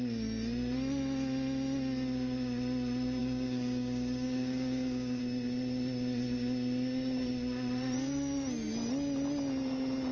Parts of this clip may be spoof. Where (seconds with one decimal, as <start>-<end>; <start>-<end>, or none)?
3.2-5.2